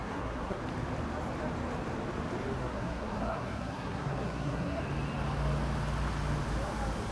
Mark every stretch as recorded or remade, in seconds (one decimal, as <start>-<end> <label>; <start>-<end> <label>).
0.0-0.6 remade; 0.6-2.6 recorded; 2.6-4.8 remade; 4.8-7.1 recorded